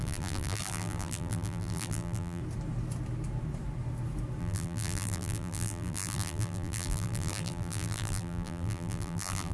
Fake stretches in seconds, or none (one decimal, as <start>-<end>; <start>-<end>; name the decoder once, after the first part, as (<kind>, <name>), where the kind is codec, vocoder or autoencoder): 0.0-2.4 (vocoder, BigVGAN v2); 4.4-9.5